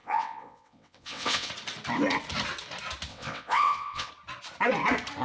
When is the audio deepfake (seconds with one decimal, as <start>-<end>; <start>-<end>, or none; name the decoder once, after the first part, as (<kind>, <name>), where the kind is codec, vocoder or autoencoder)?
0.0-1.5 (vocoder, WaveNeXt); 3.1-4.1